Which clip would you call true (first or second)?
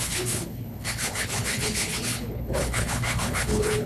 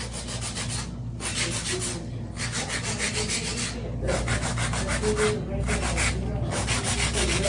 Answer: second